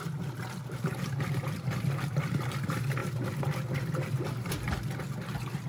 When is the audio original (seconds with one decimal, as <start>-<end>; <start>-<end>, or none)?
0.6-3.0; 4.5-5.7